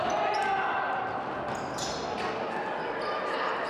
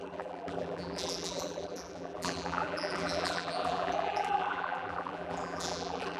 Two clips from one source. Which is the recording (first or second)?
first